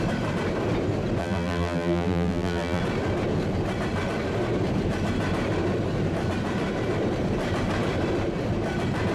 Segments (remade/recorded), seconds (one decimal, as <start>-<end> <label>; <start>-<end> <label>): 0.0-1.2 recorded; 1.2-2.8 remade; 2.8-9.1 recorded